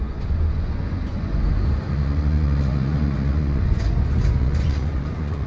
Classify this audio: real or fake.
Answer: fake